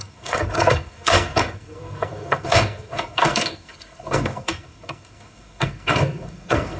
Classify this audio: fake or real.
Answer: fake